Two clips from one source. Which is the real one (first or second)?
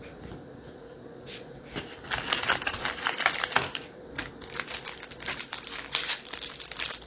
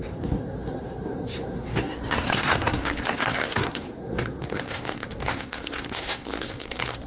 first